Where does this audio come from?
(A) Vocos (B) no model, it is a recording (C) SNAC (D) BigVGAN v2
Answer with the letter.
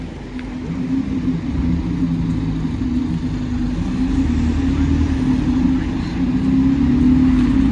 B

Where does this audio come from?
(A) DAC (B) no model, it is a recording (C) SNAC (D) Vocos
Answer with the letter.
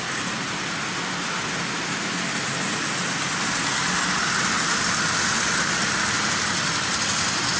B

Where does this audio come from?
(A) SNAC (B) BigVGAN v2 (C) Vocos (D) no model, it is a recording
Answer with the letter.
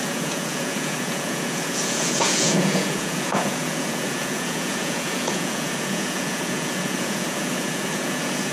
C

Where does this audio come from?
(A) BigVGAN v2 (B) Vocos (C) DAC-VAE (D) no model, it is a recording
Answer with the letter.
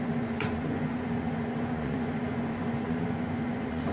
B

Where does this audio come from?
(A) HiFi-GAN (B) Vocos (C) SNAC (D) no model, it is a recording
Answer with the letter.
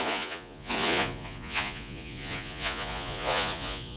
B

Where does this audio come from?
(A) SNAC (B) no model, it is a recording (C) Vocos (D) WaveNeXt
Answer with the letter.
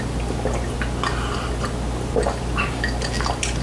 B